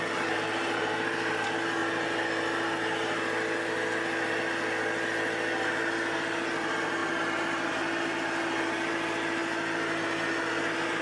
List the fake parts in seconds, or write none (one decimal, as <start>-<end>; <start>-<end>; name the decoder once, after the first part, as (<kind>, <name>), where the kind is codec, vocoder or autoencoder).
7.0-7.7 (vocoder, BigVGAN v2)